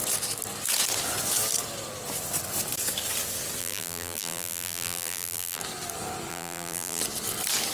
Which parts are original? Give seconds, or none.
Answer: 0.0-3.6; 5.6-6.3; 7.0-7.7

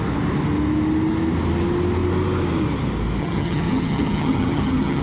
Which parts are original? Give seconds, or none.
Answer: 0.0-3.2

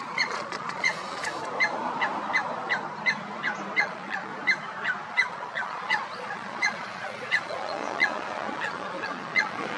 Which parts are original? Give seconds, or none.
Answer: 1.2-3.8; 4.3-5.1